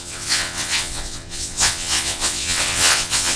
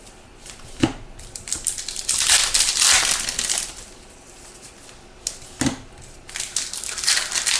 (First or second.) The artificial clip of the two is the first